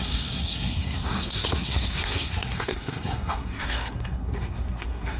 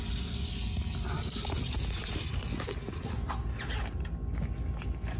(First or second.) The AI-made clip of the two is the first